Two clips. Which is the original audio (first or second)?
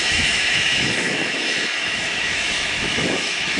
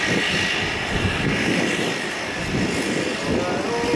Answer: second